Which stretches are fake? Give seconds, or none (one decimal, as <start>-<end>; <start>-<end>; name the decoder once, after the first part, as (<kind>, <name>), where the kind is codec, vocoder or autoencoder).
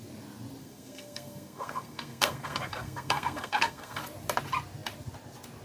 0.6-4.0 (codec, SNAC)